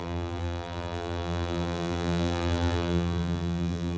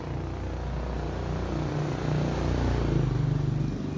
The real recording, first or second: second